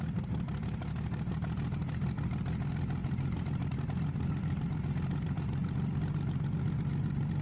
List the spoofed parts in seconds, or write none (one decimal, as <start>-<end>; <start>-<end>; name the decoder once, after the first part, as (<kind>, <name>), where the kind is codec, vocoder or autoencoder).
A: 1.8-2.5 (vocoder, BigVGAN v2); 3.0-4.9